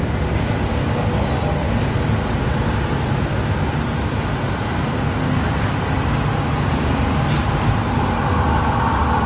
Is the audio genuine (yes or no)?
yes